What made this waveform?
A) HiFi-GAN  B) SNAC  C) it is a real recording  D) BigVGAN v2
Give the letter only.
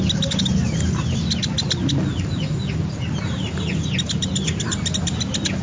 C